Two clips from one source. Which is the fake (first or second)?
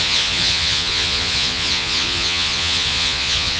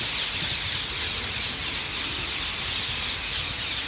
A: first